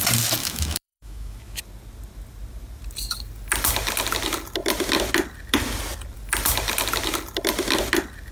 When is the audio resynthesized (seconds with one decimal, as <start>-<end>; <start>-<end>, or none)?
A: 0.4-1.6